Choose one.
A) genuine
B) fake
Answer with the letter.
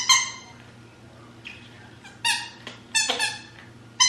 A